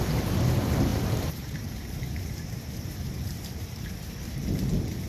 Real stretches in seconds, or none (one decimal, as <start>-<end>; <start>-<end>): 0.0-0.9; 4.0-5.1